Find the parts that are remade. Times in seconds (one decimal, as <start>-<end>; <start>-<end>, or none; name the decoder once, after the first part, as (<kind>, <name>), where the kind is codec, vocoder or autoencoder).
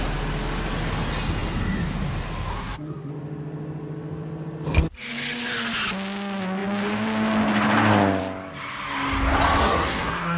2.5-3.1 (codec, SNAC); 9.6-10.4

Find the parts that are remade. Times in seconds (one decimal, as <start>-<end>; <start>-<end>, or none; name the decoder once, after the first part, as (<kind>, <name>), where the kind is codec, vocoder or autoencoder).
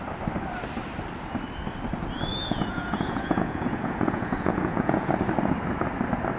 2.3-5.1 (vocoder, Vocos)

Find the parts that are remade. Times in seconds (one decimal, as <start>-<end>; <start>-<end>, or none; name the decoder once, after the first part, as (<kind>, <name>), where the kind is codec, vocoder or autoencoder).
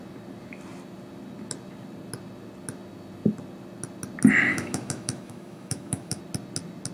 4.5-6.2 (autoencoder, DAC-VAE)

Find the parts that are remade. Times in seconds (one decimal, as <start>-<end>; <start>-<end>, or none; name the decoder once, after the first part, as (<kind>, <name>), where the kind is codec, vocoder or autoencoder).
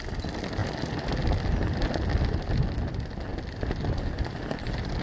none